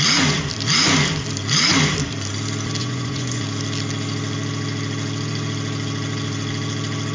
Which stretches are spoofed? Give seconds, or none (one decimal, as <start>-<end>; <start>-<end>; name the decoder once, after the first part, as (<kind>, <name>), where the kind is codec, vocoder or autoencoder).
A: 2.8-3.4 (vocoder, Vocos)